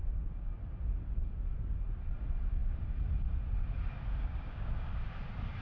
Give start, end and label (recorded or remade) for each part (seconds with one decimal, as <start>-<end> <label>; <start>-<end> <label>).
0.0-4.2 recorded; 4.2-5.0 remade; 5.0-5.6 recorded